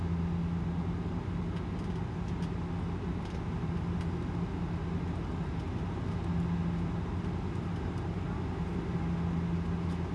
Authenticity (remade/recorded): recorded